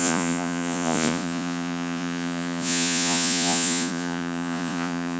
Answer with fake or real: fake